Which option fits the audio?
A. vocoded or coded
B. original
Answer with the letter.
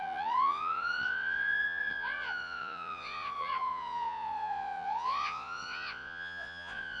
A